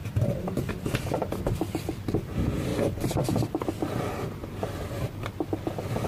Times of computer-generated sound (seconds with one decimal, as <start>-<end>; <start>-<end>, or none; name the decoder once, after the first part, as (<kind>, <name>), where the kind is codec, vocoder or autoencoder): 0.0-0.7 (vocoder, BigVGAN v2); 2.7-5.3